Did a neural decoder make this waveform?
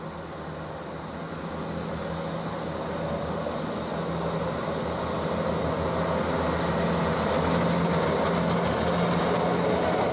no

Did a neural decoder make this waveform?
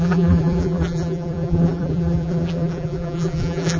yes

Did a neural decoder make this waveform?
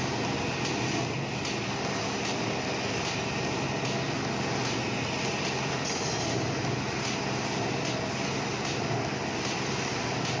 no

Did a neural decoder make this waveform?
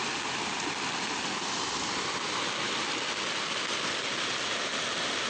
no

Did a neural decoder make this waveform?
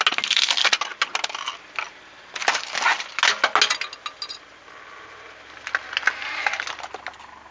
no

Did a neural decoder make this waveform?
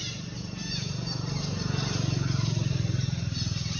no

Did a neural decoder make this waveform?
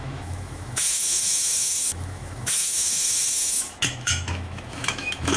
yes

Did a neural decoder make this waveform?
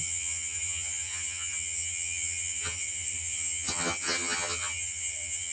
yes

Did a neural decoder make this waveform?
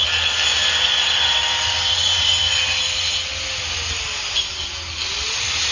no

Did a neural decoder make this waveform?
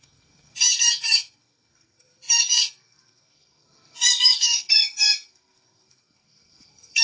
yes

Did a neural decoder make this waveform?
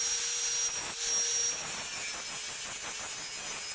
no